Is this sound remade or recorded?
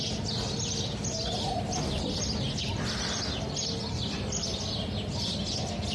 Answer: recorded